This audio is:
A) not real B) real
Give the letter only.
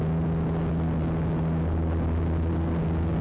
B